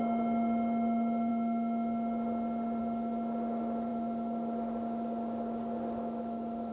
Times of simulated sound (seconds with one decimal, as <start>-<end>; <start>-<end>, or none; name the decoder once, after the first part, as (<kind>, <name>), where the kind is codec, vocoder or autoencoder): none